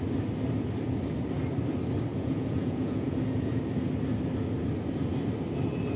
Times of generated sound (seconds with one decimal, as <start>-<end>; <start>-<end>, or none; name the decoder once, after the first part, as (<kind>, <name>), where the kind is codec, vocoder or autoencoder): 2.1-3.6 (vocoder, Vocos)